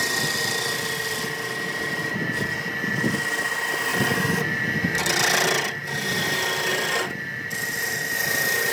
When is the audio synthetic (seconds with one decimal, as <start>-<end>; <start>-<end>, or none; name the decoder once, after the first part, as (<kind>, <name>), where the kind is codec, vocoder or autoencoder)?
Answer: none